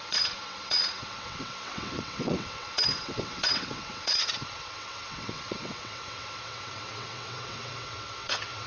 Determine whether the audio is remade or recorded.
remade